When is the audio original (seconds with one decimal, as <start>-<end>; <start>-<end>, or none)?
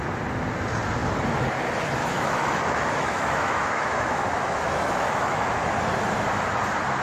0.0-2.0; 5.7-7.0